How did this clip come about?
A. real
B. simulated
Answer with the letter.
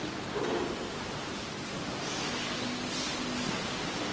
A